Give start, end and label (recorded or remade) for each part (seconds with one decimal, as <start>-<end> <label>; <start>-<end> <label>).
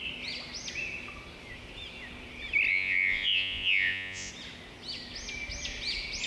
0.0-2.7 recorded; 2.7-4.3 remade; 4.3-6.3 recorded